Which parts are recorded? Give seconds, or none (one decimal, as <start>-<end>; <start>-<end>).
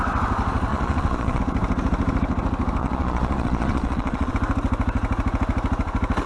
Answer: 0.0-0.7; 1.4-2.8; 4.3-6.3